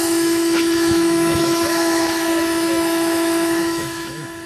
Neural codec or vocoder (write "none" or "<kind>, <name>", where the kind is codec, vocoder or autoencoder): autoencoder, DAC-VAE